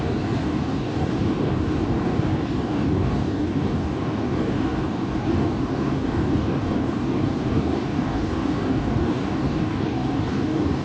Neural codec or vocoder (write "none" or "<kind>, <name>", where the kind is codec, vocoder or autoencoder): codec, DAC